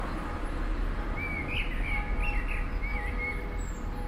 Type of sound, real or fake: real